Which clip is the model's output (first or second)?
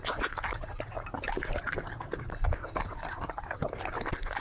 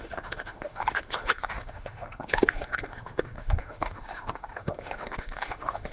second